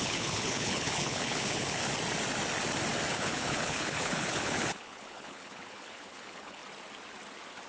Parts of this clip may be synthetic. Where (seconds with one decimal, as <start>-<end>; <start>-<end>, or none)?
0.0-1.8; 3.1-6.6